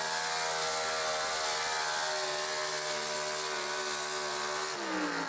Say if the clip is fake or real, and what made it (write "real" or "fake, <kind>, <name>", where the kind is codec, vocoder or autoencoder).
real